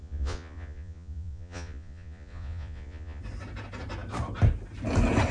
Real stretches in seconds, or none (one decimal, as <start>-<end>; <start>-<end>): 3.2-5.3